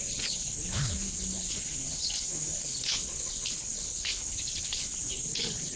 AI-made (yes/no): yes